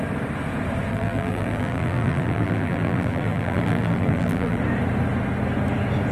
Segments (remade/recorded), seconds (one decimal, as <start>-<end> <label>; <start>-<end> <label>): 0.0-0.9 recorded; 0.9-4.6 remade; 4.6-6.1 recorded